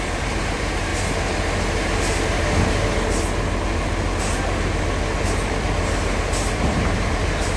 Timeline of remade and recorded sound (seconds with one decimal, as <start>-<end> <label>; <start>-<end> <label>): 0.0-0.9 remade; 0.9-5.2 recorded; 5.2-7.6 remade